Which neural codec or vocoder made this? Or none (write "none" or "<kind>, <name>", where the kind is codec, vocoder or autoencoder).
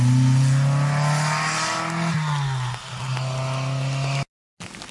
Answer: none